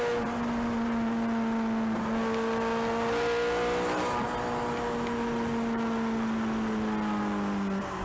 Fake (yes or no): no